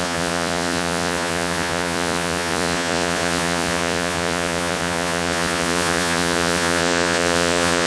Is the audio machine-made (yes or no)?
yes